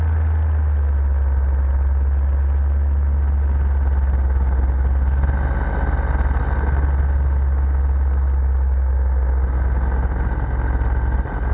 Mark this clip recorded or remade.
recorded